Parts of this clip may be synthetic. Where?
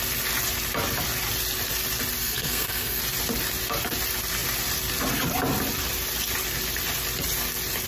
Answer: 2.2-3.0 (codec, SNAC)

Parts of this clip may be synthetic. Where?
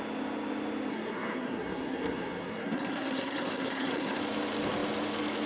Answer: 0.9-4.2 (codec, SNAC)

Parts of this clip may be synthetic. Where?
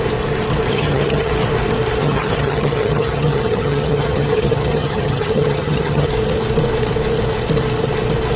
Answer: 0.7-1.3 (vocoder, HiFi-GAN); 2.0-6.1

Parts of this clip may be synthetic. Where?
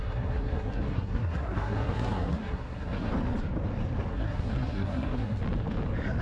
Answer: 0.0-3.1 (codec, SNAC); 4.1-5.4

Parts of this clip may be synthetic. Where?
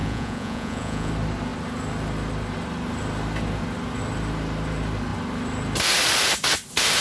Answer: 0.0-1.1 (vocoder, Vocos)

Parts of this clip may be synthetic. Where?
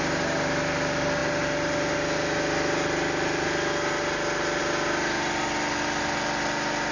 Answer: none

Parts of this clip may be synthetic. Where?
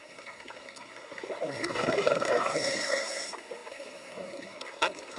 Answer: 0.0-5.2 (codec, SNAC)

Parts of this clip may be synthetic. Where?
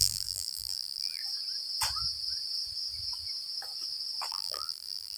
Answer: 0.0-1.2 (vocoder, BigVGAN v2); 4.3-5.2